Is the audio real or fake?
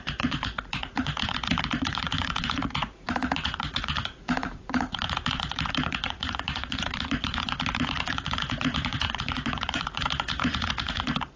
fake